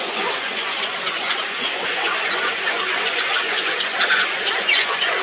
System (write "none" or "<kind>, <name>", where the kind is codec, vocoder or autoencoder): vocoder, Vocos